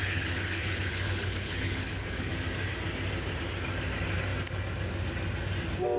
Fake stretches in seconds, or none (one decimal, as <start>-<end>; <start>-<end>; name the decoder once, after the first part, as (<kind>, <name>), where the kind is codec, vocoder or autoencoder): 0.0-2.3 (codec, HILCodec)